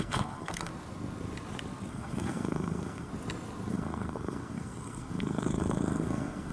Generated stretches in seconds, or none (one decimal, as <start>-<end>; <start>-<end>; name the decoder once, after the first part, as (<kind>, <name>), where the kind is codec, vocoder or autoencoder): 0.0-0.7 (codec, SNAC); 1.9-3.1; 3.7-6.5